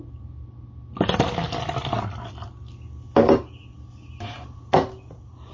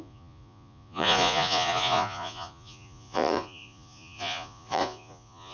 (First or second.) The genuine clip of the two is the first